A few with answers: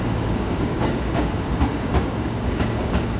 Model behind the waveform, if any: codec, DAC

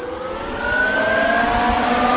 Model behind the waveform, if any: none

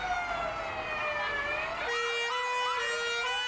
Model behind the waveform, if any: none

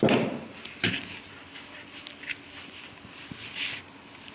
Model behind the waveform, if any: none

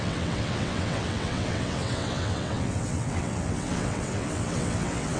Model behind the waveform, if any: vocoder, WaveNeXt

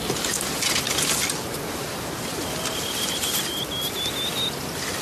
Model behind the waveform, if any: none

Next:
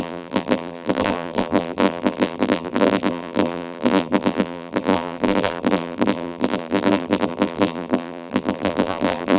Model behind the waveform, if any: vocoder, BigVGAN v2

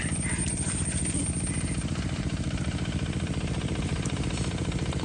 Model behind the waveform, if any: vocoder, BigVGAN v2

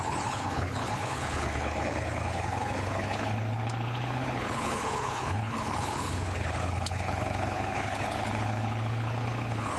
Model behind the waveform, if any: codec, HILCodec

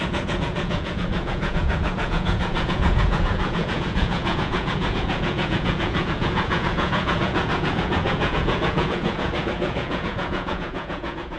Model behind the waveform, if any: vocoder, Vocos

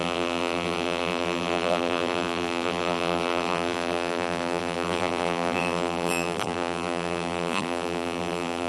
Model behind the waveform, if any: vocoder, BigVGAN v2